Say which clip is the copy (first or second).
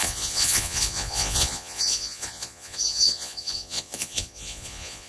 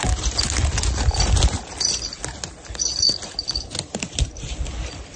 first